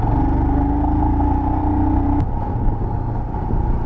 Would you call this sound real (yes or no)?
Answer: yes